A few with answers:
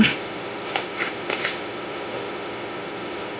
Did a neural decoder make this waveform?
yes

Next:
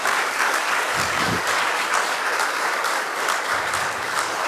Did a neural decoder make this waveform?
yes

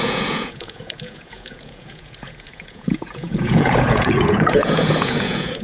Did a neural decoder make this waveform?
yes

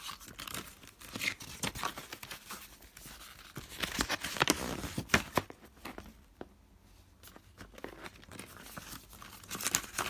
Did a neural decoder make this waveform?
no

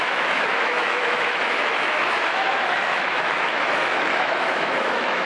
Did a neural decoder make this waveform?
yes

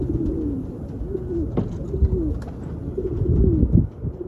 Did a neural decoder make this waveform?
no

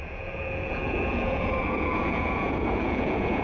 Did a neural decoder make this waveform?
yes